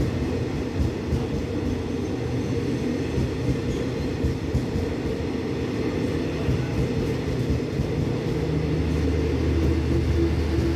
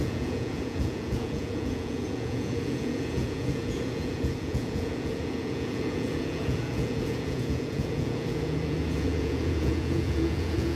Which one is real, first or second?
first